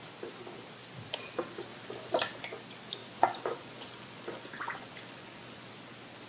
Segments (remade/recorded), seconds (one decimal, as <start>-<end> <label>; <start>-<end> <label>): 0.0-3.0 recorded; 3.0-5.7 remade; 5.7-6.3 recorded